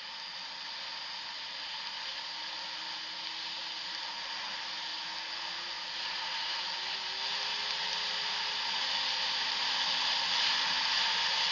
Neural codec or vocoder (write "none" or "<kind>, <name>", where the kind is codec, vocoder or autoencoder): none